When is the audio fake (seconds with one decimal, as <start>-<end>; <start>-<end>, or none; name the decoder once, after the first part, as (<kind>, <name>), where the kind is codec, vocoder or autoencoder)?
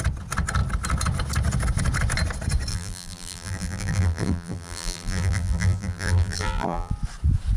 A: 2.7-6.9 (vocoder, BigVGAN v2)